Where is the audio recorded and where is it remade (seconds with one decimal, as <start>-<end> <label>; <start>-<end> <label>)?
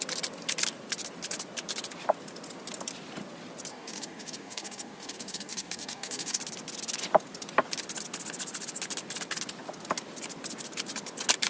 0.0-3.7 recorded; 3.7-6.4 remade; 6.4-11.5 recorded